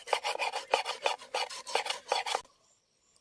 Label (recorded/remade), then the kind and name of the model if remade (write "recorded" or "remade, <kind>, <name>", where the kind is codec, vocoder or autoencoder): recorded